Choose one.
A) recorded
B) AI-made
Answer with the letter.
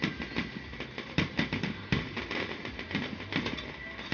A